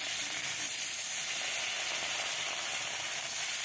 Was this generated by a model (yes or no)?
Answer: no